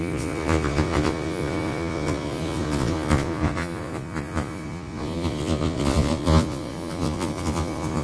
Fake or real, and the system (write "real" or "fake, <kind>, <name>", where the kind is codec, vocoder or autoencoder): fake, vocoder, Vocos